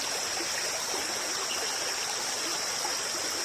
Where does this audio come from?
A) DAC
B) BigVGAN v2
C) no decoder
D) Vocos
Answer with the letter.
C